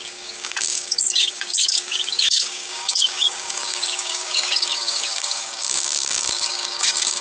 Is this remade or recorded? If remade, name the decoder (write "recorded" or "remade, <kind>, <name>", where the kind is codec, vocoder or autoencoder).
remade, codec, DAC